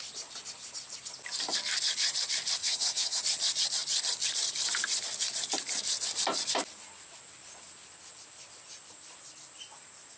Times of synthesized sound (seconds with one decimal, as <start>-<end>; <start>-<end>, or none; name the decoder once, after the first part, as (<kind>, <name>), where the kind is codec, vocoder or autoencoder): 2.6-3.2 (vocoder, HiFi-GAN)